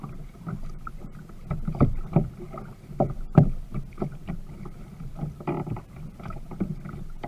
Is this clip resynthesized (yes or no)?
no